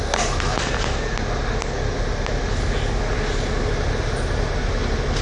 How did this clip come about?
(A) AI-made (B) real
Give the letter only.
B